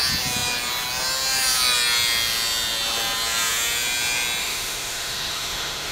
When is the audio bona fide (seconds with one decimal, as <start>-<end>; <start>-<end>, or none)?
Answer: 0.0-4.4

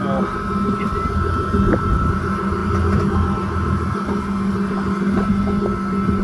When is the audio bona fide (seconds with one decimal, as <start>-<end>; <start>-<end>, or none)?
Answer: 0.0-6.2

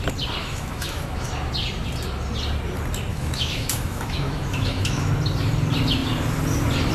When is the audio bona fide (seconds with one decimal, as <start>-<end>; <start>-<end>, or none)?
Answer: 0.0-0.4; 1.3-3.1; 5.1-6.9